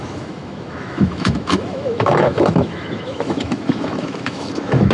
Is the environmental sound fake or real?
fake